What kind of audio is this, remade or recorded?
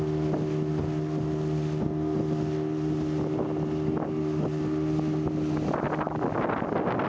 recorded